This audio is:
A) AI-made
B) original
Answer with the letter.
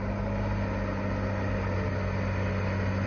B